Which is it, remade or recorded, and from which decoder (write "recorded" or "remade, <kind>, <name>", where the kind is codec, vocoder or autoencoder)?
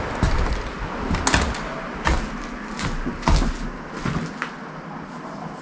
recorded